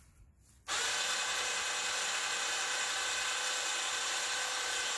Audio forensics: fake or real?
real